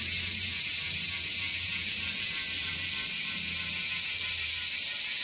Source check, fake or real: fake